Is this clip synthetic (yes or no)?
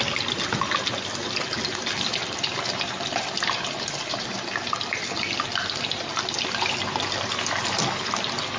no